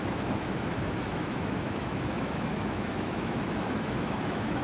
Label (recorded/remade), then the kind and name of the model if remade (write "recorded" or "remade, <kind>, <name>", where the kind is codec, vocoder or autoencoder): remade, autoencoder, DAC-VAE